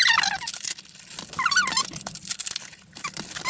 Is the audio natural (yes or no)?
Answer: yes